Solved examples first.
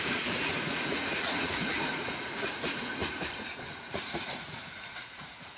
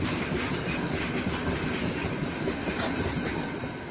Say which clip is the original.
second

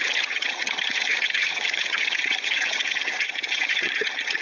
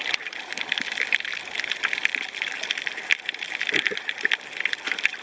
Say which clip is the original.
second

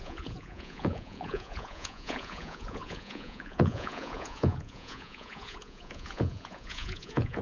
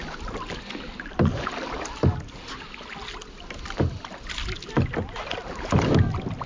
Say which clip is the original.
second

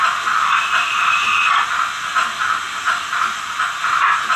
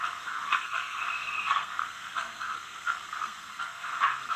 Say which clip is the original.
first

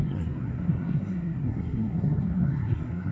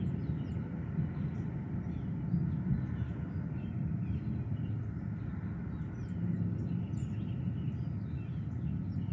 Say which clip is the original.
second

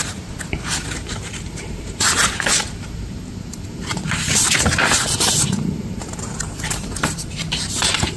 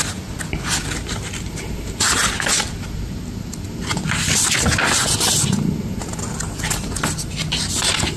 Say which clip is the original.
second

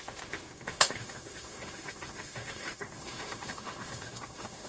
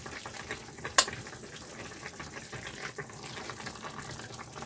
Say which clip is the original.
second